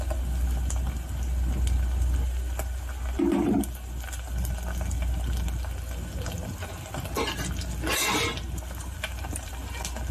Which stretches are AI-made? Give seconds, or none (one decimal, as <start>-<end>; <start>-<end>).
8.8-9.5